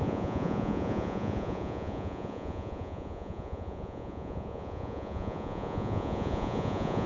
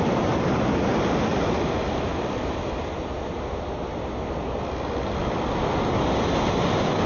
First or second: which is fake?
first